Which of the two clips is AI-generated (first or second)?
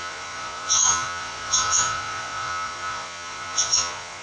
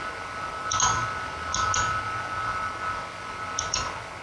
first